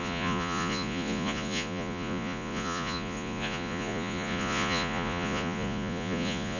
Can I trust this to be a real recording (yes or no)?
no